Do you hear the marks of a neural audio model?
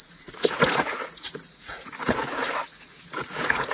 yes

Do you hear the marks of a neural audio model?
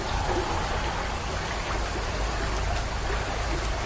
no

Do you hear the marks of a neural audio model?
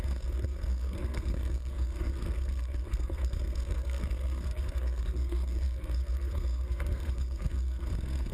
yes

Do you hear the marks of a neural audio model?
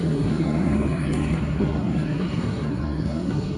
yes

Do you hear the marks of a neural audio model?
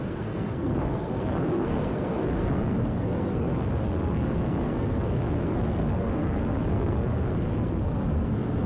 yes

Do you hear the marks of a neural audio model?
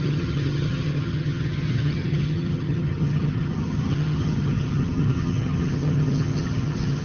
yes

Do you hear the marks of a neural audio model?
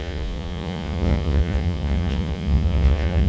yes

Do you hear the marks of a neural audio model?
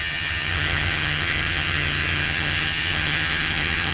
yes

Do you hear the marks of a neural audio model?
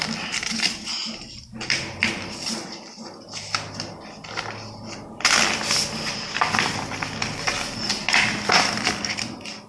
no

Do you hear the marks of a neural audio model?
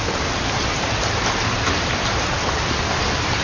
no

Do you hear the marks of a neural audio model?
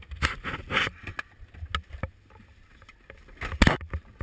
no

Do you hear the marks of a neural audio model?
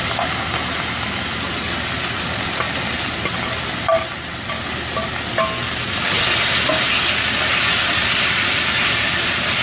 no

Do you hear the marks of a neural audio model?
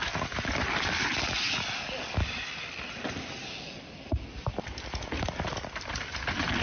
no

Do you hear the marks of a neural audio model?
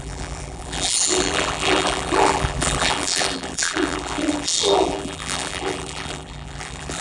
yes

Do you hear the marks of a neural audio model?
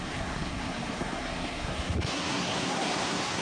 yes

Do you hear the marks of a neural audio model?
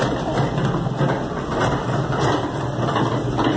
no